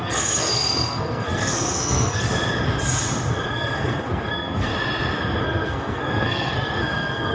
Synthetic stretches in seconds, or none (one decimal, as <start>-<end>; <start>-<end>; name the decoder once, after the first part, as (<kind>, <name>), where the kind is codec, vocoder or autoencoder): 0.0-2.3 (codec, SNAC); 3.5-4.7; 5.4-7.3